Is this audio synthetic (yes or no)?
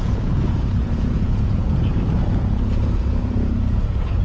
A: yes